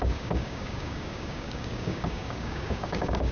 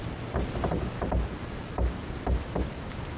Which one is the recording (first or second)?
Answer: second